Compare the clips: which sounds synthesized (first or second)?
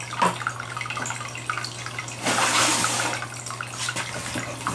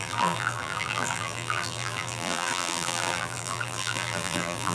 second